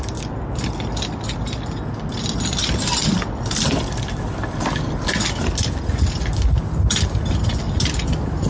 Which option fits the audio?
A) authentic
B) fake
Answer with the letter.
A